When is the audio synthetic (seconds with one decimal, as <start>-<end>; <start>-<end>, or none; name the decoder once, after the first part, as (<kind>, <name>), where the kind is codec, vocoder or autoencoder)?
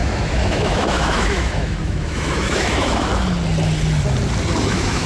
0.0-3.1 (autoencoder, DAC-VAE); 4.6-5.1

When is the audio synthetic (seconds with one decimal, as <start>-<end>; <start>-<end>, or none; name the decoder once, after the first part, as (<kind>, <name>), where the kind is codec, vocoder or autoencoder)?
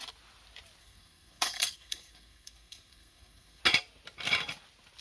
0.8-3.6 (codec, SNAC)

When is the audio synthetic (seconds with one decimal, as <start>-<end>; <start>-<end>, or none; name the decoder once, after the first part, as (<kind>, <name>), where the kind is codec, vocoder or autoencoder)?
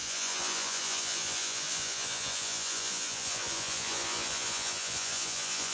0.0-5.7 (vocoder, Vocos)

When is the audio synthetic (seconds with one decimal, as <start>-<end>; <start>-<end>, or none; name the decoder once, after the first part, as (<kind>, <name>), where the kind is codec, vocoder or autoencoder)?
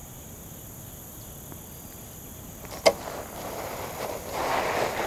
none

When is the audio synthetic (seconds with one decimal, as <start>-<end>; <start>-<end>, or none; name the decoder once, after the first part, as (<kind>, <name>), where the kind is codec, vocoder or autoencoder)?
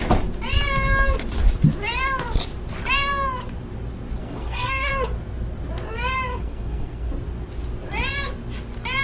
4.2-4.9 (codec, SNAC); 6.3-7.1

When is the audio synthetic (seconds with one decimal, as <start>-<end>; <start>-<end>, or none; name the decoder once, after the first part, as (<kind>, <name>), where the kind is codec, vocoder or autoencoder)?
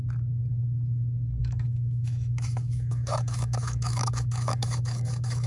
1.4-5.5 (autoencoder, DAC-VAE)